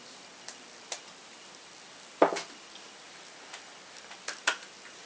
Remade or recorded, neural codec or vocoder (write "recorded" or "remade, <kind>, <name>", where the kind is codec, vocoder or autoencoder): recorded